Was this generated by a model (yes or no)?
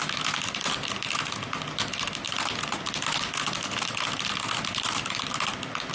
no